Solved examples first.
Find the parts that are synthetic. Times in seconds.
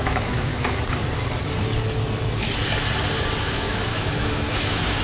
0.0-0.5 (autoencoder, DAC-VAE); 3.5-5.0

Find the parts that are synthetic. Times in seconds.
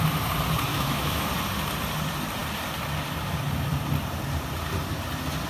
0.7-1.3 (autoencoder, DAC-VAE)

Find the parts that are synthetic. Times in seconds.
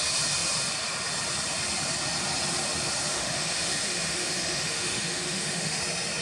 3.1-5.8 (autoencoder, DAC-VAE)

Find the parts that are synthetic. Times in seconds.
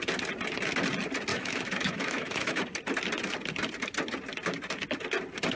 1.3-2.6 (autoencoder, DAC-VAE)